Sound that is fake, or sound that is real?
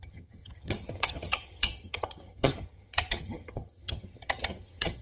fake